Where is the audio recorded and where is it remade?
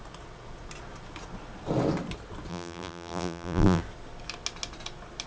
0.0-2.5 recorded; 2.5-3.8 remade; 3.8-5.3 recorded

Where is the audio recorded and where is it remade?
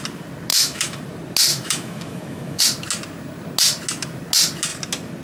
0.0-0.5 recorded; 0.5-1.0 remade; 1.0-1.5 recorded; 1.5-2.6 remade; 2.6-5.2 recorded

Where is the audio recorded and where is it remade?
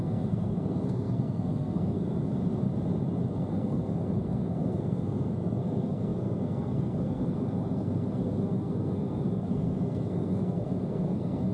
0.0-2.4 remade; 2.4-3.3 recorded; 3.3-11.5 remade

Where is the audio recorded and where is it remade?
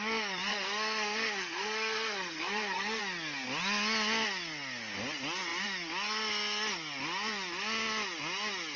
0.0-0.5 recorded; 0.5-3.0 remade; 3.0-8.8 recorded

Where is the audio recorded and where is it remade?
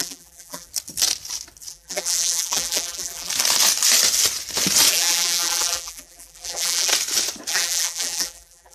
0.0-0.7 remade; 0.7-1.7 recorded; 1.7-3.3 remade; 3.3-4.9 recorded; 4.9-6.9 remade; 6.9-7.5 recorded; 7.5-8.7 remade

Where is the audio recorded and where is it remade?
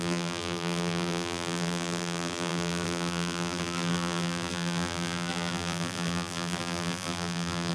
0.0-7.7 remade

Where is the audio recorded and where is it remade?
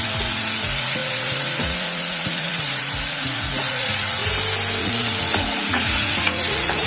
0.0-4.2 remade; 4.2-4.8 recorded; 4.8-6.9 remade